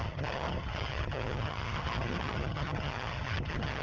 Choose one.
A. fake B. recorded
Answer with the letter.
A